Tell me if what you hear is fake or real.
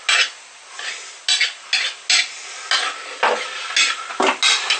real